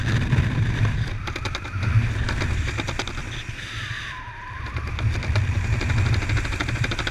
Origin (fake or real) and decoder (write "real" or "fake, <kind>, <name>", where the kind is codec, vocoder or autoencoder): real